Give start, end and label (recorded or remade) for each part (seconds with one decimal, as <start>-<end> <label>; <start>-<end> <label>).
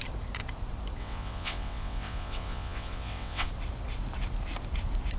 0.0-1.0 recorded; 1.0-3.5 remade; 3.5-5.2 recorded